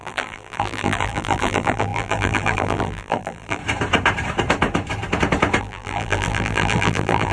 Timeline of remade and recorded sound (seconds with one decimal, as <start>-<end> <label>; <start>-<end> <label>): 0.0-3.6 remade; 3.6-5.6 recorded; 5.6-7.3 remade